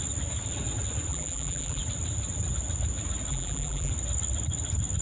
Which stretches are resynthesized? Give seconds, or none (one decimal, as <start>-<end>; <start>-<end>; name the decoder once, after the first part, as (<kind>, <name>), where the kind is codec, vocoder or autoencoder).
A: 1.1-1.8 (vocoder, BigVGAN v2); 3.3-3.9